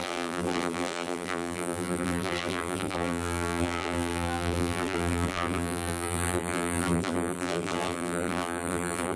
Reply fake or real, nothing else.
fake